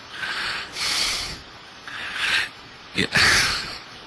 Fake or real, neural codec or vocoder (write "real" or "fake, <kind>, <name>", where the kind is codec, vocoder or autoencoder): real